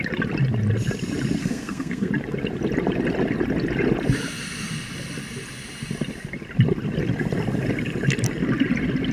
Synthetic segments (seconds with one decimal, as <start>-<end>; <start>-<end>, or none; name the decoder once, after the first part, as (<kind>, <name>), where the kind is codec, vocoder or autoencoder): 1.4-2.1 (codec, SNAC)